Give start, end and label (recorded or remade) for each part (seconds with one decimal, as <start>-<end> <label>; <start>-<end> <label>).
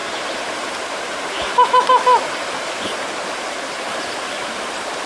0.0-3.1 remade; 3.1-5.1 recorded